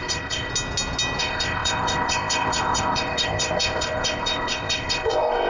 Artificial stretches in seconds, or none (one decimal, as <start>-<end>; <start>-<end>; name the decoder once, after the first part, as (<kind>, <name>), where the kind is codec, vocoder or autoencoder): 0.0-0.5 (codec, ZipCodec); 1.2-5.5